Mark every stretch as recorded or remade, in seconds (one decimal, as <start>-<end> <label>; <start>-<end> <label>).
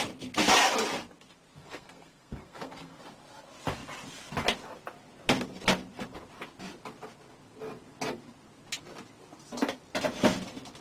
0.0-1.6 recorded; 1.6-3.0 remade; 3.0-10.8 recorded